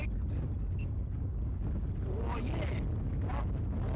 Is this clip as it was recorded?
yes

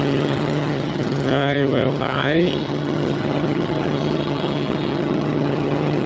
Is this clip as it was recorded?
no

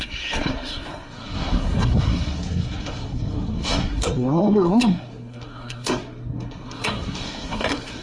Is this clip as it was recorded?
no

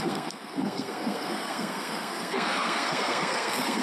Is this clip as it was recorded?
no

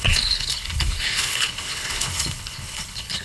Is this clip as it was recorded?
no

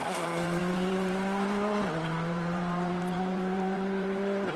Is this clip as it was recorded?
no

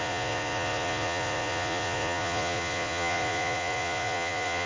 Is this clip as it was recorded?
no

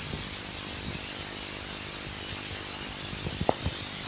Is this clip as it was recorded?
yes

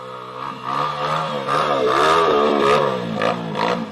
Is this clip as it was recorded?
yes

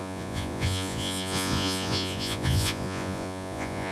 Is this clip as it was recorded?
no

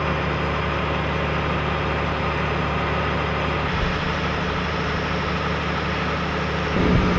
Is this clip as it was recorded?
yes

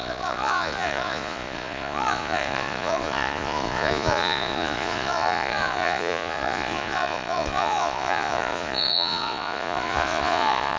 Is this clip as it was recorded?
no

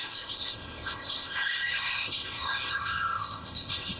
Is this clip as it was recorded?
no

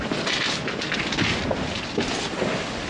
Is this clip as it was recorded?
yes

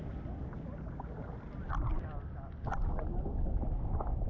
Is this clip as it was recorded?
yes